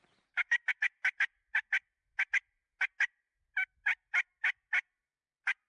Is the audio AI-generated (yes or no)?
no